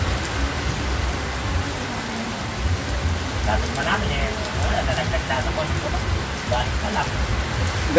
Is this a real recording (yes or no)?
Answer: yes